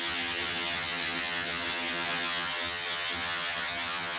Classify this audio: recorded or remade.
remade